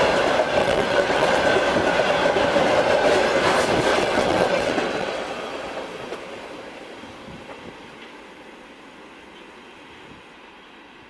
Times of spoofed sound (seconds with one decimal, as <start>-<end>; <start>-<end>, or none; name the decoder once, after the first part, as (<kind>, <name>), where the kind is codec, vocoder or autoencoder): 0.6-1.4 (vocoder, WaveNeXt); 3.9-5.3